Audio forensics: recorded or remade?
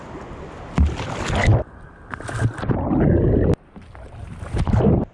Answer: recorded